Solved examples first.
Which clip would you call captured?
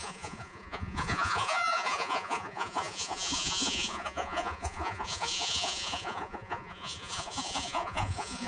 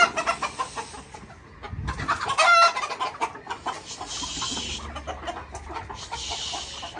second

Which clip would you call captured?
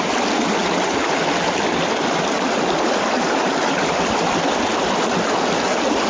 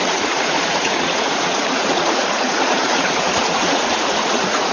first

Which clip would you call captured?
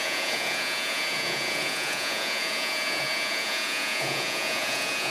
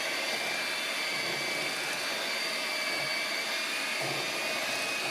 second